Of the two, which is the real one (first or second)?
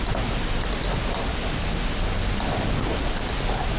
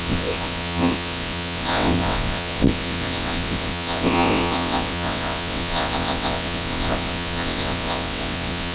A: first